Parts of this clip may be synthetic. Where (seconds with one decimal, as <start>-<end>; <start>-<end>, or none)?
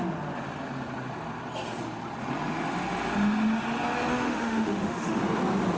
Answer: 4.1-5.2